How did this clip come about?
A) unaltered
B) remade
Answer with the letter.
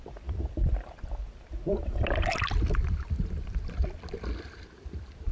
B